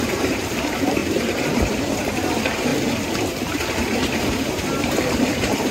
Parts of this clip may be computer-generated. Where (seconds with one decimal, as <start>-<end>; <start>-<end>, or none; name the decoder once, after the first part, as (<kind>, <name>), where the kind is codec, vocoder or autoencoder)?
0.0-2.7 (vocoder, BigVGAN v2); 4.2-5.7